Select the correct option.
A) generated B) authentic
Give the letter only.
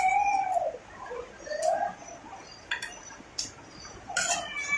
B